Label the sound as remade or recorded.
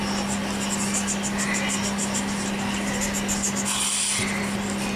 recorded